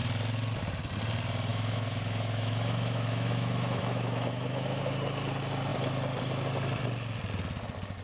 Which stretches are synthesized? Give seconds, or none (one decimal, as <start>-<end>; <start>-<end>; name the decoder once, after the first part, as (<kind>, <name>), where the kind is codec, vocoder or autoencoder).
1.5-4.8 (autoencoder, DAC-VAE)